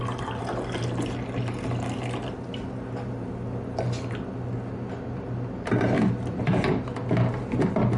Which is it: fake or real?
real